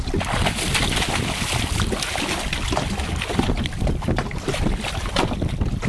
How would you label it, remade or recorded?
recorded